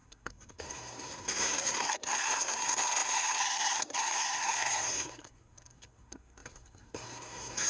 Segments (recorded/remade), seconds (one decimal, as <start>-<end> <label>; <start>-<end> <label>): 0.0-7.7 remade